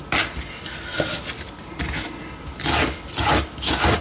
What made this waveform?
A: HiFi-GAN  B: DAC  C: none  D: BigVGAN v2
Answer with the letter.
C